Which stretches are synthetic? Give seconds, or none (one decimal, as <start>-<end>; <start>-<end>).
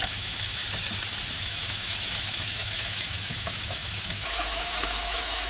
0.0-0.6; 1.4-5.5